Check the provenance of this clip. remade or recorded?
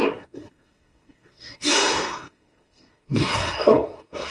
remade